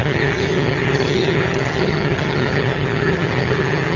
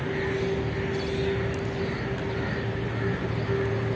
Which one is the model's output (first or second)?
first